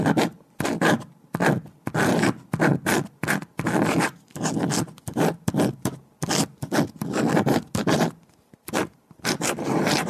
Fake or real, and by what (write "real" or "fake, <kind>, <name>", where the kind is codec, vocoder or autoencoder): real